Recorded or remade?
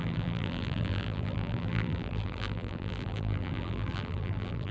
remade